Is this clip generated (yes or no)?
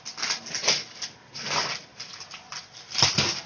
no